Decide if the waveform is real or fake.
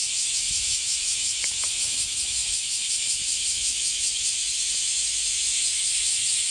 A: fake